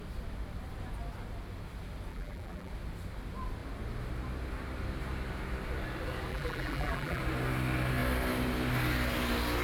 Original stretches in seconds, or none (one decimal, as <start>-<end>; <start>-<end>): 0.0-2.1; 2.7-6.3; 7.2-9.6